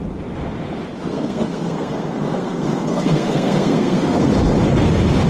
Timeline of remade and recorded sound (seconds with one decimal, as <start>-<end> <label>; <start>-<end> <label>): 0.0-1.1 recorded; 1.1-4.3 remade; 4.3-5.3 recorded